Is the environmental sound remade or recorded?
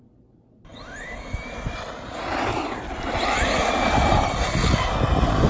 recorded